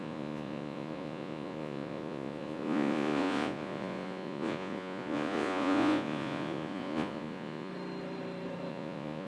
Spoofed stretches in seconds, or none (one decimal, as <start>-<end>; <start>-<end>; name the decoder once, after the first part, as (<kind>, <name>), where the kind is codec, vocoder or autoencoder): 0.0-7.7 (vocoder, Vocos); 8.7-9.3